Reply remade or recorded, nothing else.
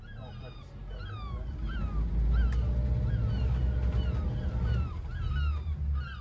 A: recorded